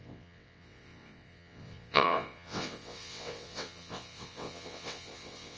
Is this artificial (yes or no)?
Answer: yes